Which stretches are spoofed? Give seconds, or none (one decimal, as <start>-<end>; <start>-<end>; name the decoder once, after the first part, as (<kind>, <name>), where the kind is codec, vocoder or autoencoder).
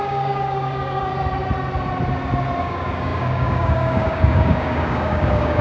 0.0-1.1 (codec, DAC); 2.6-5.6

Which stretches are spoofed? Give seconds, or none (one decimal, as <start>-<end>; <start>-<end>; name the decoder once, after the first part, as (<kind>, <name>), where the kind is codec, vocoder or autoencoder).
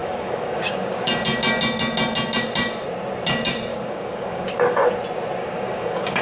0.0-1.1 (codec, DAC); 3.7-4.9; 5.4-6.2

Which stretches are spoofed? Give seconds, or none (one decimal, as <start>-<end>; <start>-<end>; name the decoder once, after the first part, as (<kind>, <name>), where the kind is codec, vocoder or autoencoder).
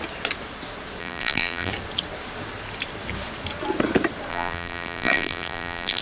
1.0-1.7 (vocoder, BigVGAN v2); 4.3-6.0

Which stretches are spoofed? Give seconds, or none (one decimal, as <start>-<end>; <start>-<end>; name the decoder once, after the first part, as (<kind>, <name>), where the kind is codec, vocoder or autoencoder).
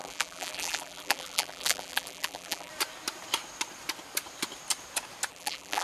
0.0-2.7 (vocoder, BigVGAN v2); 5.3-5.8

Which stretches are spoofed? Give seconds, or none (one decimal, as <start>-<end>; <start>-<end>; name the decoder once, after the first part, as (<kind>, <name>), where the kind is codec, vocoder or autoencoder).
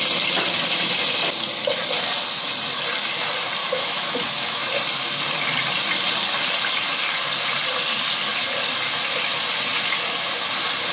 3.6-4.7 (autoencoder, DAC-VAE)